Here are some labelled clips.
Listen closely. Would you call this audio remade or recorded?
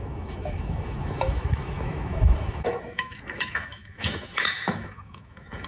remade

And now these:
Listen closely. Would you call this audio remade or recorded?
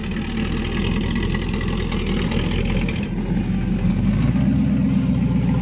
recorded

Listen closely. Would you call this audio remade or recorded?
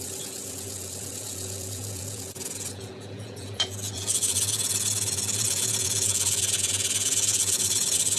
remade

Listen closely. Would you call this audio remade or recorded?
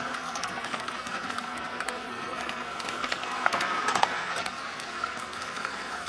remade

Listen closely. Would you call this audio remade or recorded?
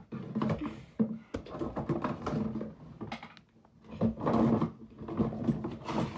recorded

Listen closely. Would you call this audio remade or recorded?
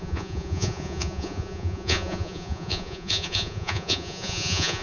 remade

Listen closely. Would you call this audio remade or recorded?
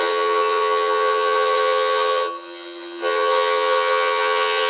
remade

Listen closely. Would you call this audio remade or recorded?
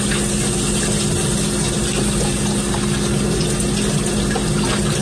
recorded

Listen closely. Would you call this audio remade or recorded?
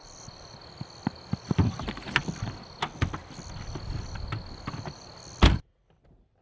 recorded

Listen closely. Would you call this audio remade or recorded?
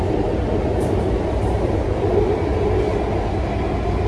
recorded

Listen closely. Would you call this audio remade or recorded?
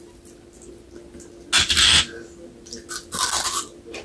recorded